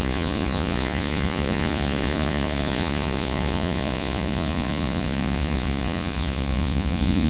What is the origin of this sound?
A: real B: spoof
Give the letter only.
B